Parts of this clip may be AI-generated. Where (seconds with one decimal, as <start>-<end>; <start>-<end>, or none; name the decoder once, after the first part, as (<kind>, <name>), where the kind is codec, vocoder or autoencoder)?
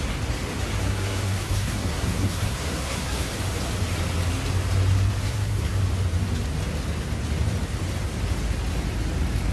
0.8-3.3 (codec, SNAC); 5.2-5.8